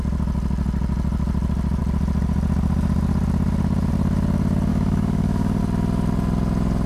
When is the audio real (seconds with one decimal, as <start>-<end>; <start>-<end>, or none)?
0.0-4.7; 5.6-6.9